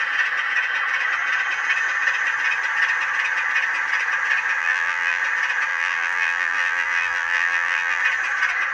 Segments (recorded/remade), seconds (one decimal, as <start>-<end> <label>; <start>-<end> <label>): 0.0-4.6 recorded; 4.6-5.2 remade; 5.2-5.7 recorded; 5.7-8.0 remade; 8.0-8.7 recorded